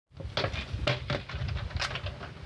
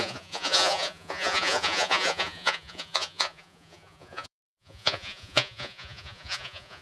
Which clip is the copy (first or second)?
second